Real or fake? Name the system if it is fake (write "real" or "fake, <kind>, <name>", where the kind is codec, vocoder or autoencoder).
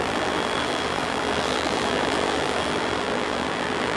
fake, vocoder, BigVGAN v2